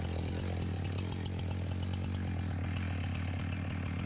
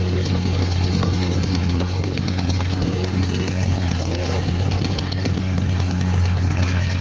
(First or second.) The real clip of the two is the first